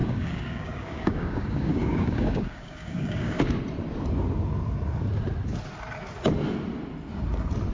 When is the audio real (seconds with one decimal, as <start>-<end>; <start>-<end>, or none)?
3.6-7.7